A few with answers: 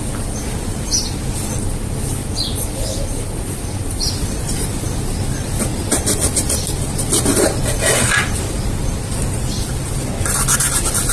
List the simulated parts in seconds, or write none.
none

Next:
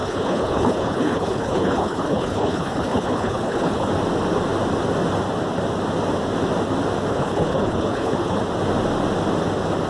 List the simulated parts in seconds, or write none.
0.0-3.9 (codec, HILCodec); 7.1-8.4

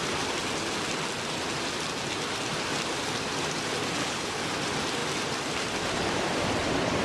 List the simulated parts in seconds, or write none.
4.0-4.5 (codec, HILCodec)

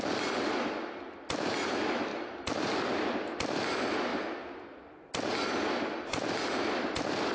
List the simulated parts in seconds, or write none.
none

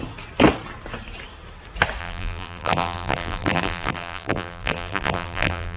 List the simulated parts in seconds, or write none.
2.0-5.8 (vocoder, BigVGAN v2)

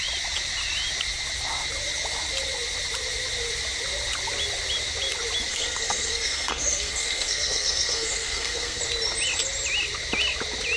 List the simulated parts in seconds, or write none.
5.5-8.8 (codec, SNAC)

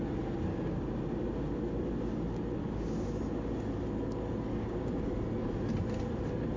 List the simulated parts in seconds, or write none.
0.5-1.0 (codec, DAC); 2.6-3.2; 4.5-5.1